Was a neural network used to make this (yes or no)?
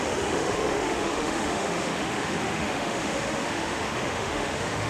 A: yes